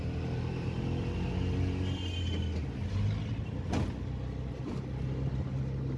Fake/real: real